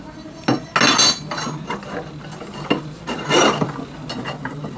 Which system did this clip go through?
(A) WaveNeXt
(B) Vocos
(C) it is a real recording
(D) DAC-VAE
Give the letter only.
C